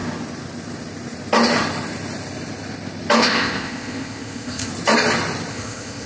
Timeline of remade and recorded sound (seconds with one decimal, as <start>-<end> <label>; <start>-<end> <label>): 0.0-3.2 recorded; 3.2-4.7 remade; 4.7-5.5 recorded; 5.5-6.1 remade